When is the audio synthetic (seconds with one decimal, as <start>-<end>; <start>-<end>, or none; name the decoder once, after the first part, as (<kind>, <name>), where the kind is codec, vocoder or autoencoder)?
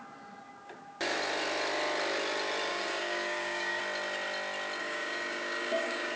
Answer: 2.7-3.8 (codec, DAC); 4.8-6.2